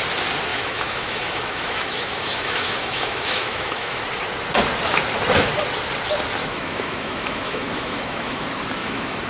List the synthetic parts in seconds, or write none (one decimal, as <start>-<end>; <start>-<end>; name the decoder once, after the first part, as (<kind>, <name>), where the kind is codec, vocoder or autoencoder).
0.5-4.0 (autoencoder, DAC-VAE); 6.4-8.4; 8.8-9.3